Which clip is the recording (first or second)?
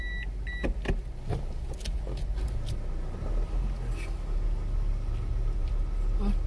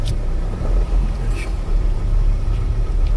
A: first